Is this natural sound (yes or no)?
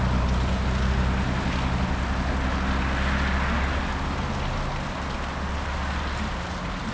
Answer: yes